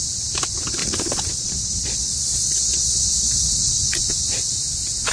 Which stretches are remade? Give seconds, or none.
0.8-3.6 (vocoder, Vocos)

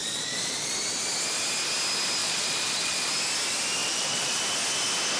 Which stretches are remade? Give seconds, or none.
0.0-0.7 (vocoder, Vocos); 2.2-3.1; 3.8-4.4

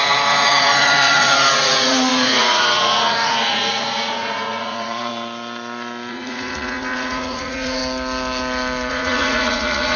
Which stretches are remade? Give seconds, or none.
0.0-5.1 (vocoder, Vocos); 6.1-7.8; 8.9-10.0

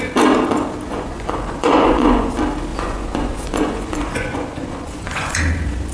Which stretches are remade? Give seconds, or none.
0.9-2.3 (vocoder, Vocos); 2.7-5.4

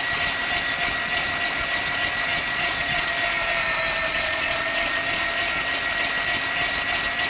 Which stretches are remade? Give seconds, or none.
2.3-3.1 (vocoder, Vocos); 4.1-4.6

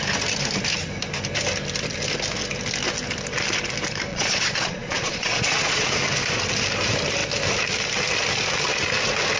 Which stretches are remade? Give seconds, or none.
4.1-5.9 (vocoder, Vocos)

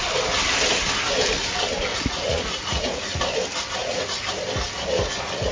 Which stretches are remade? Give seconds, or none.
1.9-3.2 (vocoder, Vocos); 3.8-4.3